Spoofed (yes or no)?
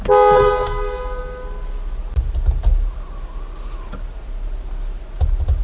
no